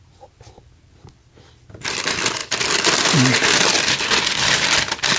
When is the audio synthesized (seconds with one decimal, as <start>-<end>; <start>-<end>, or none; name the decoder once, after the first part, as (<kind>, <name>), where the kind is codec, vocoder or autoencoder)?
none